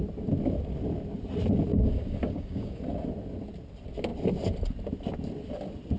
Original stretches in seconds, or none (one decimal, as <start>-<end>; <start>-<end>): 0.0-1.7; 2.8-6.0